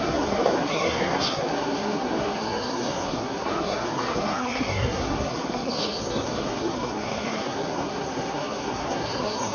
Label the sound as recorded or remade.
remade